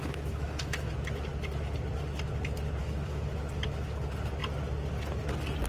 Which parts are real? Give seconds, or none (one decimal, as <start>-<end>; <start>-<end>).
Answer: 0.9-2.8; 3.3-5.7